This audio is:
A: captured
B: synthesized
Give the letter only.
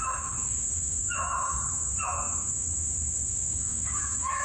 B